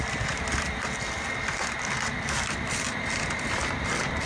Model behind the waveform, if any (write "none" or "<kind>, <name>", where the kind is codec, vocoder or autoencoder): vocoder, BigVGAN v2